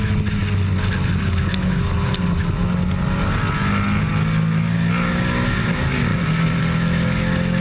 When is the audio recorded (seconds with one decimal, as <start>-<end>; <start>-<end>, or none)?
0.0-6.1; 6.6-7.6